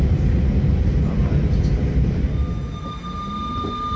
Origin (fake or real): real